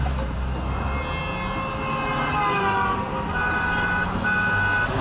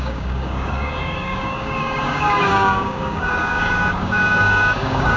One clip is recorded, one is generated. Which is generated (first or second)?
second